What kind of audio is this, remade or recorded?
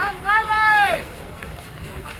remade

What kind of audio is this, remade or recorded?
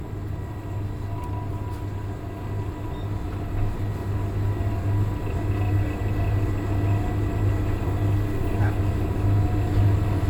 recorded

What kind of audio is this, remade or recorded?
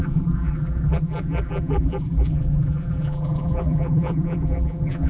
remade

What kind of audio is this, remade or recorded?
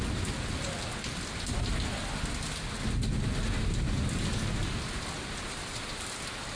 recorded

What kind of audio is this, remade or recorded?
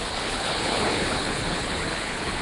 remade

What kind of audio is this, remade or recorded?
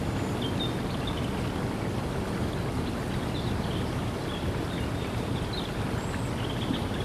recorded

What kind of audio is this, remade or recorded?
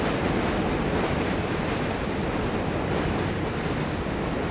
remade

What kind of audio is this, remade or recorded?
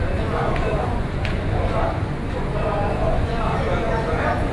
remade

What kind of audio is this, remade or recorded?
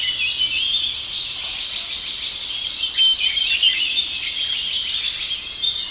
recorded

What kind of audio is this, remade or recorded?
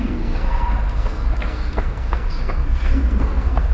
remade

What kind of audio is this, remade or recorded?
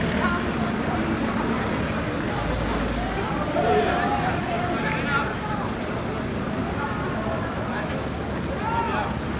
recorded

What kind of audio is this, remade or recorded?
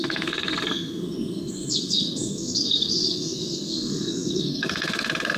remade